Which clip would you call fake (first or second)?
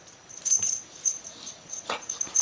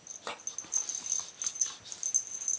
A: first